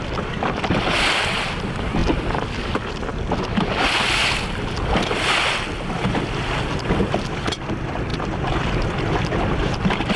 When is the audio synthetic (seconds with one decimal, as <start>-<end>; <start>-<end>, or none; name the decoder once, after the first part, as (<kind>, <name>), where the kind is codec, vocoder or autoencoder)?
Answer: 0.0-2.0 (vocoder, BigVGAN v2); 7.0-10.2